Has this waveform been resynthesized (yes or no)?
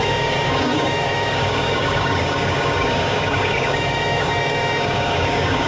yes